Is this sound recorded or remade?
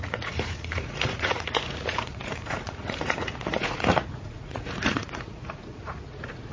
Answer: remade